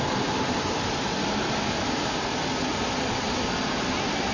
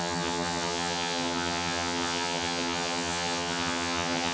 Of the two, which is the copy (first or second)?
second